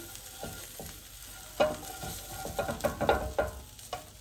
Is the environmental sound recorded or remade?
recorded